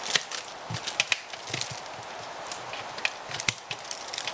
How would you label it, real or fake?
real